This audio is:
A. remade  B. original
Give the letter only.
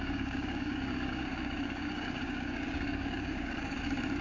A